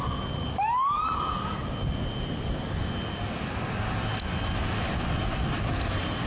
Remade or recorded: recorded